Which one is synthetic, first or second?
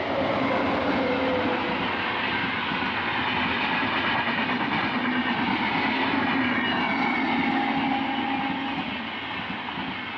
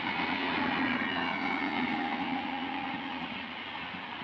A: second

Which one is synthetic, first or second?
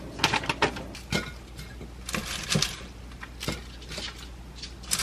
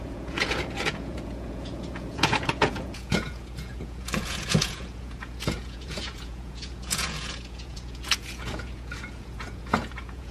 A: second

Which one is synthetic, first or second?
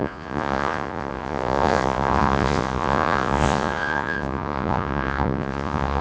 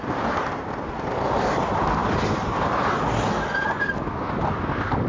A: first